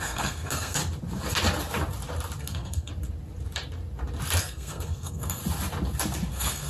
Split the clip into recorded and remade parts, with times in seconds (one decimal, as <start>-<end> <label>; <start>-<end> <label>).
0.0-0.8 remade; 0.8-2.4 recorded; 2.4-2.9 remade; 2.9-4.4 recorded; 4.4-5.4 remade; 5.4-6.3 recorded; 6.3-6.7 remade